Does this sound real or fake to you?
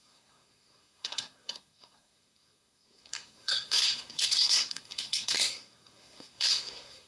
fake